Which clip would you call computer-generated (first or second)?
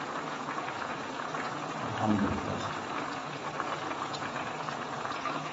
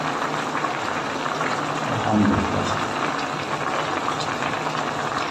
first